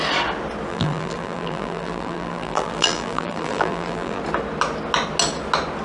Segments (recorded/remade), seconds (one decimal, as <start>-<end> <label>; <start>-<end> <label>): 0.0-0.7 recorded; 0.7-4.2 remade; 4.2-5.8 recorded